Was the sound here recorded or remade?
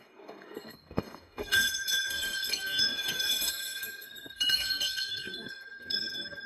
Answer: remade